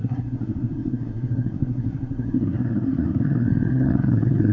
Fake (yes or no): yes